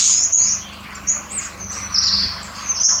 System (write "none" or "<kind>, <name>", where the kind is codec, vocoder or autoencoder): none